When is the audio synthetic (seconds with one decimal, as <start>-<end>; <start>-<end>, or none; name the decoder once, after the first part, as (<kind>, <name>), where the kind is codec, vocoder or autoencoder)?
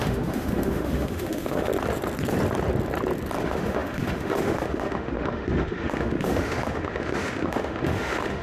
0.0-1.7 (autoencoder, DAC-VAE); 3.4-8.4